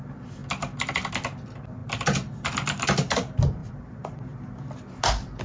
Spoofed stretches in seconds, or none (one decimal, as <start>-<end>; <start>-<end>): 0.4-1.1; 1.8-2.8; 3.6-4.2